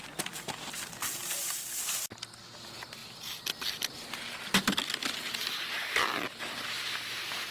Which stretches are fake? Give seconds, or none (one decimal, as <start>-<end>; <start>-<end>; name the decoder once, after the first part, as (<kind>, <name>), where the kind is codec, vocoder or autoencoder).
none